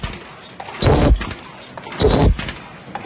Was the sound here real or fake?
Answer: real